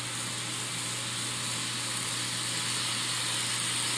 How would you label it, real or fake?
real